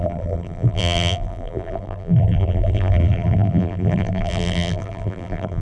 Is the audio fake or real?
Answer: fake